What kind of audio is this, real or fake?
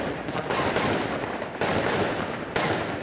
real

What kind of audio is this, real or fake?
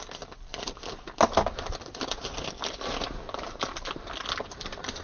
real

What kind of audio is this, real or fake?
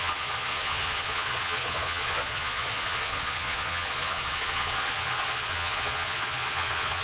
fake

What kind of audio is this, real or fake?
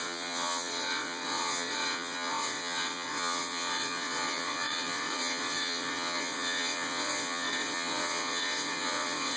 fake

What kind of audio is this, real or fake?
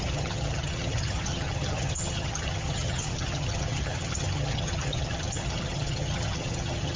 fake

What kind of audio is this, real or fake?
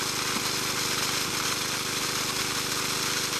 real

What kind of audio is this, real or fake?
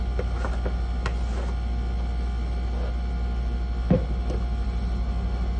real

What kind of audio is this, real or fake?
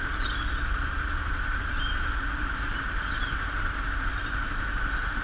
real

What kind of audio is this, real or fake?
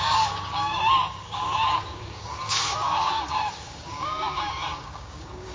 fake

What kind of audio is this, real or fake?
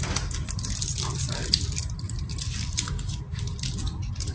real